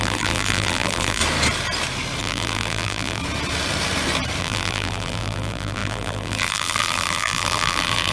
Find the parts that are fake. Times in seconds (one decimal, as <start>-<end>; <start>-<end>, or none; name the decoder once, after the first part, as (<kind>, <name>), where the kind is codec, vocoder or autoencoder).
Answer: 0.0-1.2 (vocoder, BigVGAN v2); 2.2-3.2; 4.4-8.1